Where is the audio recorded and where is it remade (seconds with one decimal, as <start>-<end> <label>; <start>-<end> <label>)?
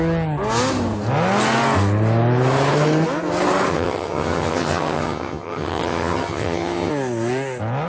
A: 0.0-3.7 recorded; 3.7-6.9 remade; 6.9-7.9 recorded